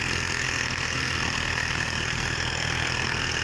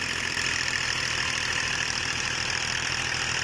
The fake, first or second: first